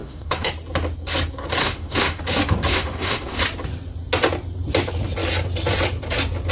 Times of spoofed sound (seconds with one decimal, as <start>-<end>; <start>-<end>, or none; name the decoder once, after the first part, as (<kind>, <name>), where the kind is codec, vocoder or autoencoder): 0.0-0.5 (autoencoder, DAC-VAE); 1.6-2.2; 2.7-3.4